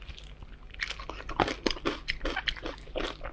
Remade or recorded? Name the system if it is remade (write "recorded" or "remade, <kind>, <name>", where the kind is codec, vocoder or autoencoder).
recorded